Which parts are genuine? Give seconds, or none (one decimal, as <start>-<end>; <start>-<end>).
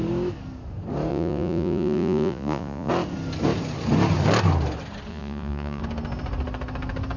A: 0.0-1.1; 2.9-5.1; 5.8-7.2